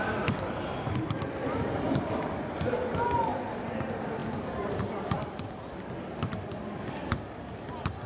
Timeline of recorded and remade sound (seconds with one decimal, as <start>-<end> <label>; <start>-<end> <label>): 0.0-8.1 recorded